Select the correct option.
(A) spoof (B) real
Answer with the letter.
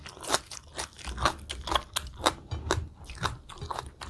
B